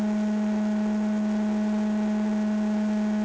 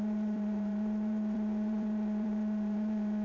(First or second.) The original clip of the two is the first